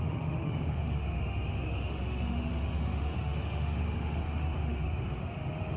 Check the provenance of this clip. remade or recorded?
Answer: remade